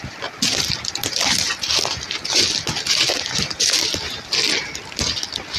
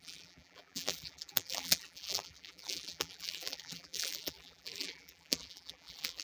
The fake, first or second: second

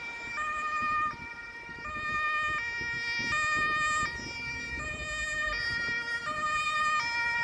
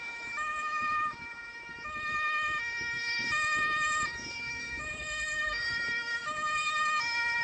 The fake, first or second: second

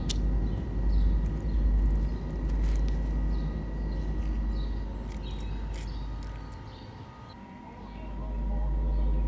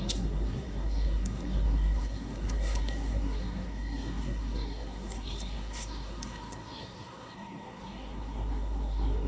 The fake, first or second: second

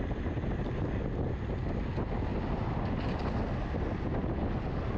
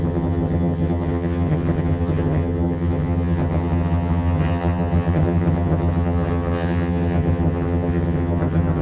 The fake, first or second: second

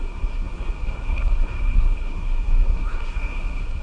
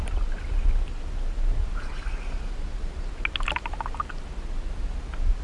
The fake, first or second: first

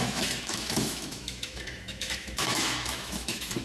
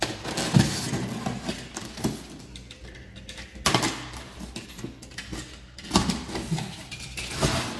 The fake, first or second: first